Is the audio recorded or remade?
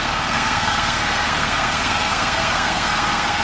remade